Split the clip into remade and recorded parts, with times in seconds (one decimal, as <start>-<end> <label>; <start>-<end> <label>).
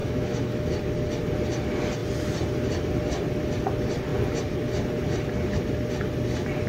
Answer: 0.0-0.7 remade; 0.7-6.7 recorded